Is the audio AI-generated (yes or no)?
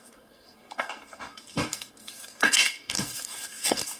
yes